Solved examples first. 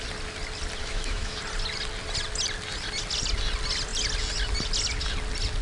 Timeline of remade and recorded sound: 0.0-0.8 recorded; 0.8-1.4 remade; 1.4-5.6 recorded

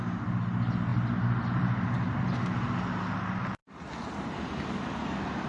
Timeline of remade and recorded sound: 0.0-5.5 recorded

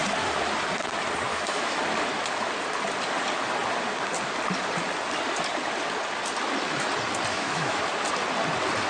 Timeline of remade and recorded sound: 0.0-1.3 recorded; 1.3-1.8 remade; 1.8-7.3 recorded; 7.3-7.8 remade; 7.8-8.9 recorded

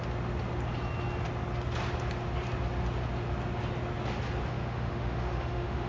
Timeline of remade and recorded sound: 0.0-4.5 recorded; 4.5-5.9 remade

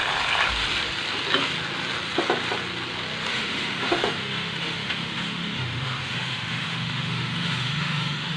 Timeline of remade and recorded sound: 0.0-3.3 recorded; 3.3-8.4 remade